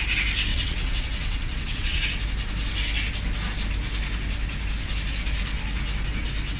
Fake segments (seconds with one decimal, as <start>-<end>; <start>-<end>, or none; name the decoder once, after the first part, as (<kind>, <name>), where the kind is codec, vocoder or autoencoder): 0.5-2.0 (vocoder, WaveNeXt)